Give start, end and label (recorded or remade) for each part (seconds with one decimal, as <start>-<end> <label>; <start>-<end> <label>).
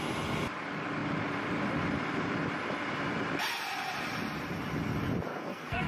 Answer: 0.0-5.3 recorded; 5.3-5.9 remade